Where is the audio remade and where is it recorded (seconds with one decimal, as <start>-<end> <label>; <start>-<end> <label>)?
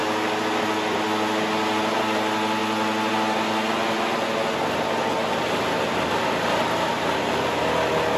0.0-8.2 recorded